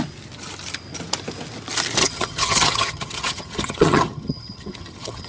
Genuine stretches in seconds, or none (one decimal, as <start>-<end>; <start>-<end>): 0.0-2.0